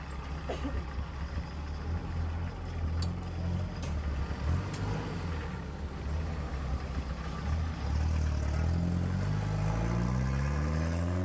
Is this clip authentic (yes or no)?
yes